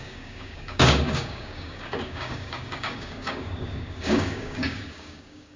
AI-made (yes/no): yes